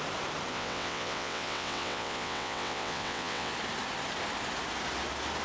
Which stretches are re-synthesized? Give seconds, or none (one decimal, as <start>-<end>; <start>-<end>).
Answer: 0.5-3.5